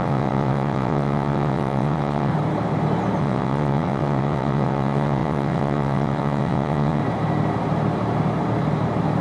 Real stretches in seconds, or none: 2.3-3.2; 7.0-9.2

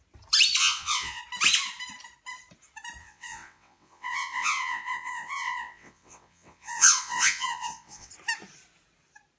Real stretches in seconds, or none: 0.0-0.6; 1.2-3.0; 8.1-9.4

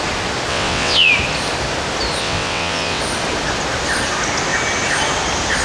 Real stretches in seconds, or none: 0.0-0.5; 1.1-2.2; 3.0-5.6

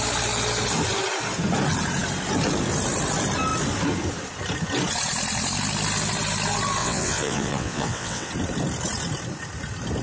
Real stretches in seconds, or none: 0.0-6.8; 8.3-10.0